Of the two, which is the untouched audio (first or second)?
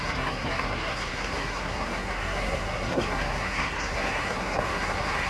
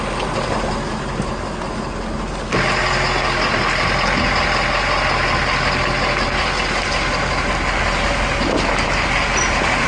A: second